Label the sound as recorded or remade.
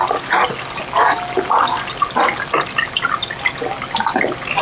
recorded